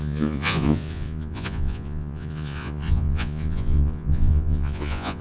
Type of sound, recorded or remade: remade